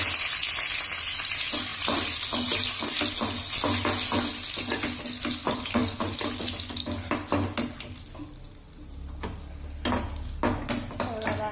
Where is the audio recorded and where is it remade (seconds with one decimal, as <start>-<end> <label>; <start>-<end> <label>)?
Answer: 0.0-11.5 recorded